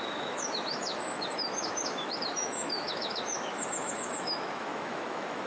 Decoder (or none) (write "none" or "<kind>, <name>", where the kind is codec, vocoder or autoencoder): autoencoder, DAC-VAE